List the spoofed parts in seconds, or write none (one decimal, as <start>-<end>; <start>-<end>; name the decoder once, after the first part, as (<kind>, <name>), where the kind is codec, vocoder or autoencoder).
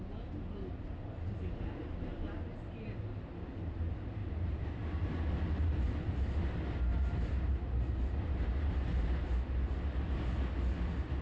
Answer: 6.9-9.8 (vocoder, BigVGAN v2)